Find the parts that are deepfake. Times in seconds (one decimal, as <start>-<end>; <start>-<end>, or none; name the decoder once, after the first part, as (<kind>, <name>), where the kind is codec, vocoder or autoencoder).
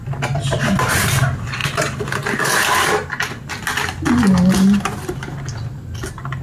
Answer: none